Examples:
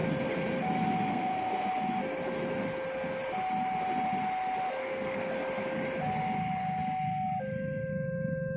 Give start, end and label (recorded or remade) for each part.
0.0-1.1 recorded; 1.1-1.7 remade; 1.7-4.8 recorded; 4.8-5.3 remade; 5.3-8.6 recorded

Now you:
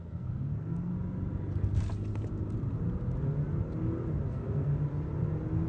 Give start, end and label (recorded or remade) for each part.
0.0-0.9 remade; 0.9-4.3 recorded; 4.3-4.7 remade; 4.7-5.7 recorded

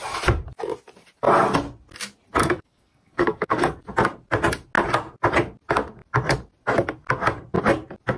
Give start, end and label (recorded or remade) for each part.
0.0-2.4 recorded; 2.4-3.8 remade; 3.8-8.2 recorded

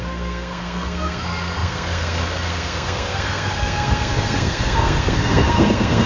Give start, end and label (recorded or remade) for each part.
0.0-6.1 remade

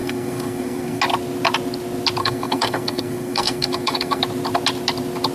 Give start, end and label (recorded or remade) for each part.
0.0-1.0 remade; 1.0-2.2 recorded; 2.2-4.2 remade; 4.2-5.3 recorded

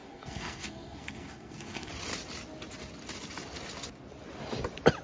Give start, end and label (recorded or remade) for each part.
0.0-1.9 remade; 1.9-5.0 recorded

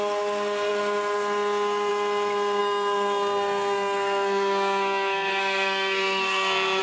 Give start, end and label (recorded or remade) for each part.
0.0-2.6 recorded; 2.6-6.8 remade